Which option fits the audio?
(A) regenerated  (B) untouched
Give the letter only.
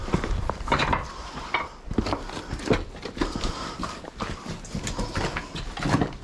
B